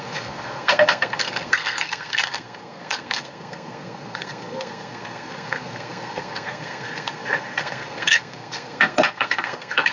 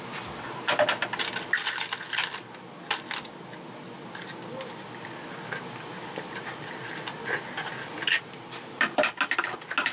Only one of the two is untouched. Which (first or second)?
second